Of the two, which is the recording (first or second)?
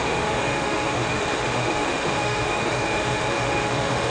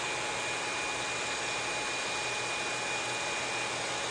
second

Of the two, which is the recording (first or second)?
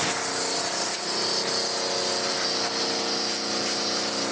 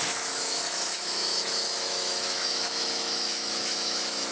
first